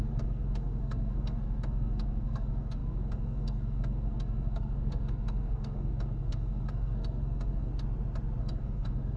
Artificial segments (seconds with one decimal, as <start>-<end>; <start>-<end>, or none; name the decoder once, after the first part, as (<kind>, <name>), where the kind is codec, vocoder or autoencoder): 0.0-7.7 (codec, SNAC); 8.4-9.2